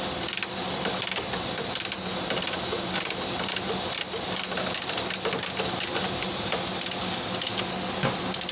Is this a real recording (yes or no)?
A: yes